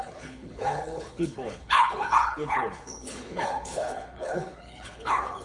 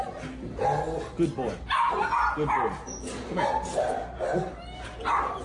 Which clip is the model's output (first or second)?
first